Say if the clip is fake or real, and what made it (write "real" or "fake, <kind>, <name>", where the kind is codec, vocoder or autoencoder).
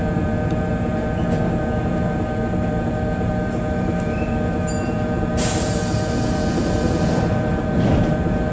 fake, vocoder, BigVGAN v2